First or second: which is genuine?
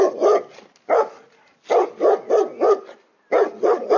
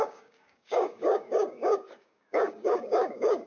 first